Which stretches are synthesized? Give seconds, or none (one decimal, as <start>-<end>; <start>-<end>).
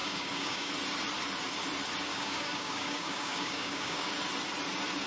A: 0.0-0.7; 2.1-4.1